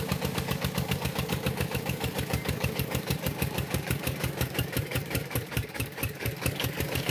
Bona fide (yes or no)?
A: no